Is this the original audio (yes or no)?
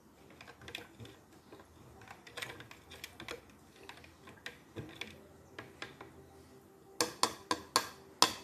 yes